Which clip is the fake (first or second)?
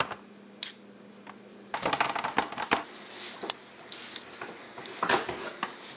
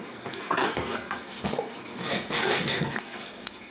second